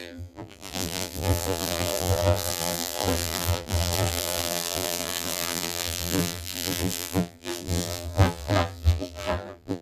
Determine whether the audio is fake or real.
fake